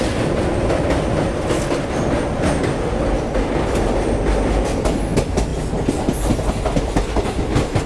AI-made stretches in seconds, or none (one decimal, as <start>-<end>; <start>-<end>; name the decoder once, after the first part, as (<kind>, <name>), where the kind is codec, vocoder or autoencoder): none